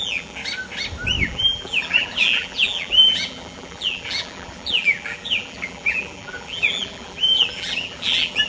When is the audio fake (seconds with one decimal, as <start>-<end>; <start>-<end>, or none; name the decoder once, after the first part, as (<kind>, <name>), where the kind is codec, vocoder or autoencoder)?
0.0-0.4 (vocoder, BigVGAN v2); 1.2-8.5